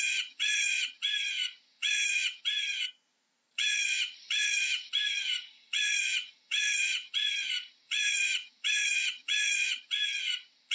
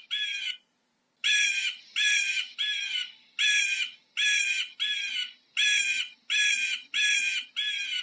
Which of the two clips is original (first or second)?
second